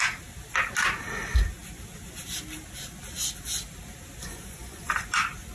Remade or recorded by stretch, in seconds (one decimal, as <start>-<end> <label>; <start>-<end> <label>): 0.0-4.2 recorded; 4.2-4.9 remade; 4.9-5.5 recorded